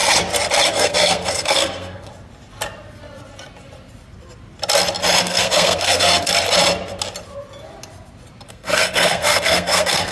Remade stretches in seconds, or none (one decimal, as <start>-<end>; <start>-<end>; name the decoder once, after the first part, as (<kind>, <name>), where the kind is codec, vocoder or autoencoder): 0.7-2.1 (codec, SNAC); 5.2-6.3; 8.5-10.1